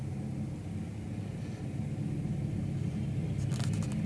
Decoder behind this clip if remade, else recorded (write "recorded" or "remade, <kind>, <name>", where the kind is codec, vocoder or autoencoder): recorded